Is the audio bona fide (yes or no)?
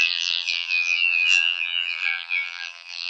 no